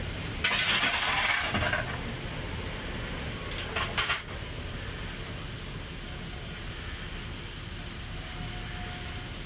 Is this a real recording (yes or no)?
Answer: yes